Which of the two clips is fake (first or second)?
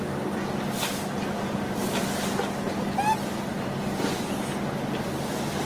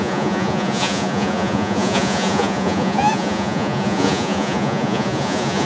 second